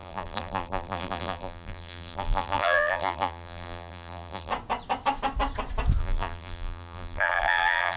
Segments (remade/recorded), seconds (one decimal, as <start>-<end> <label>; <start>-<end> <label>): 0.0-4.5 remade; 4.5-6.0 recorded; 6.0-8.0 remade